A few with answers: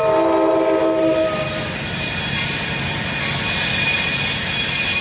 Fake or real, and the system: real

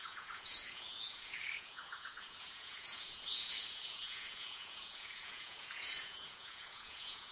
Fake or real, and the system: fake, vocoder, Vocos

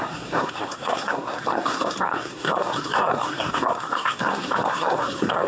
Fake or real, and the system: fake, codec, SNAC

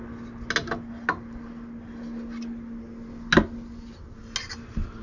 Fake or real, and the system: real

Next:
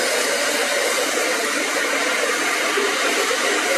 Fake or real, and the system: real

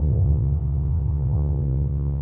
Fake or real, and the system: fake, vocoder, WaveNeXt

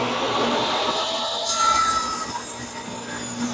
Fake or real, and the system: real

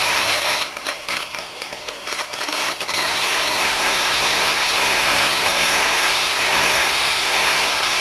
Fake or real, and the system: fake, codec, SNAC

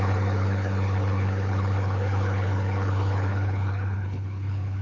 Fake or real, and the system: fake, codec, HILCodec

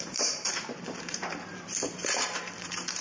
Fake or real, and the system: fake, vocoder, BigVGAN v2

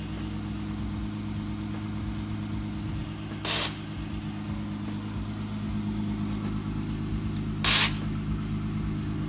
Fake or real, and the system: real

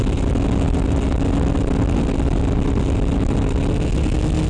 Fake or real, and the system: real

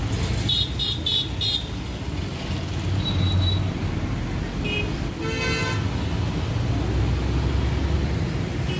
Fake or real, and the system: real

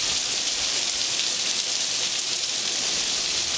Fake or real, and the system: fake, vocoder, BigVGAN v2